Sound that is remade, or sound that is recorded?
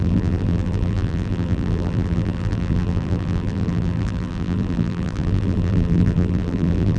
remade